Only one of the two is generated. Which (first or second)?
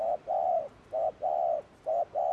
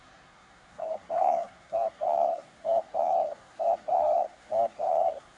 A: second